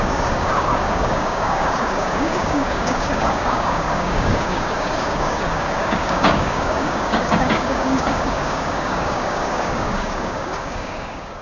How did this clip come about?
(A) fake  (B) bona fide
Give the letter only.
A